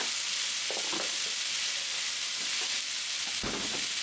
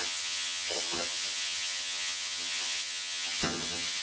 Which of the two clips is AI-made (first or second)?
second